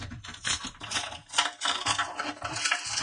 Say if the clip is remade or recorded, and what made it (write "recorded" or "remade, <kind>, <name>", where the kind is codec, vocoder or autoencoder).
remade, vocoder, BigVGAN v2